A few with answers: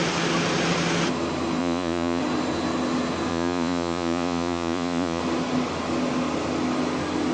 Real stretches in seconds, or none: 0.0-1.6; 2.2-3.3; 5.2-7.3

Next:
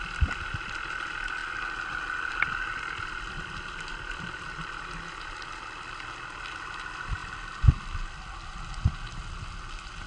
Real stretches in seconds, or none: 0.0-10.1

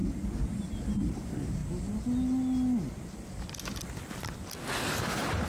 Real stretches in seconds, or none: 0.0-1.1; 1.6-4.9

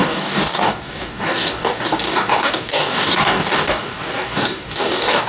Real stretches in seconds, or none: none

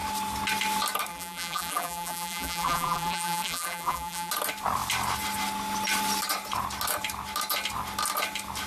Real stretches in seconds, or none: 0.0-1.1; 4.3-8.7

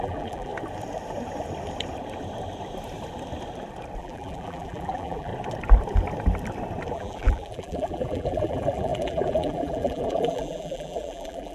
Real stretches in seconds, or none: 0.5-4.0; 5.3-6.9